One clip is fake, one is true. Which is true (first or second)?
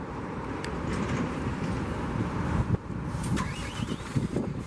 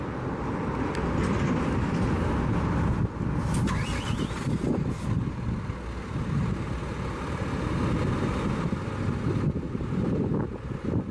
second